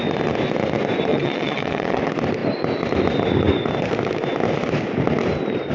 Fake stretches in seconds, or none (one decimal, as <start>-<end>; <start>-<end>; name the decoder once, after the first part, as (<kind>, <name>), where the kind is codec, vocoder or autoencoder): 1.1-2.0 (vocoder, WaveNeXt)